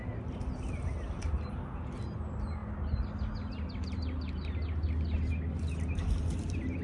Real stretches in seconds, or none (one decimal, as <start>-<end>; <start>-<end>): 0.0-6.8